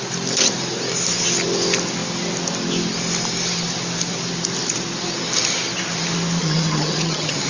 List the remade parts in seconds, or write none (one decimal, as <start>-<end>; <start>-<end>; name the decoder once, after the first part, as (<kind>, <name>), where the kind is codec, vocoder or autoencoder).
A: 6.4-7.5 (vocoder, HiFi-GAN)